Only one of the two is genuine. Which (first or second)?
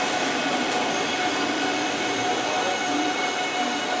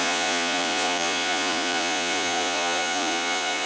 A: first